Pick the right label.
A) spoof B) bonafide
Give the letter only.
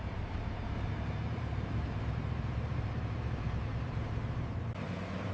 A